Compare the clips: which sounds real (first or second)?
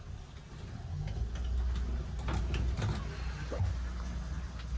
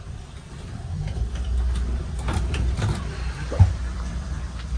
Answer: first